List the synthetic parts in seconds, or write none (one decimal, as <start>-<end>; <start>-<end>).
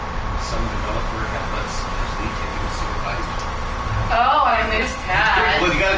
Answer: 4.5-5.1